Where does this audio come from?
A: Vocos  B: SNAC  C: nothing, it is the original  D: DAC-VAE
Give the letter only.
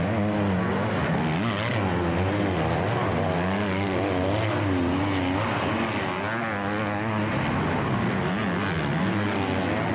C